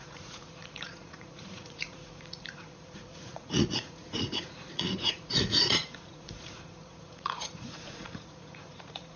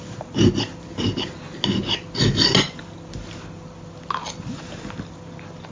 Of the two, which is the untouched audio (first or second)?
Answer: second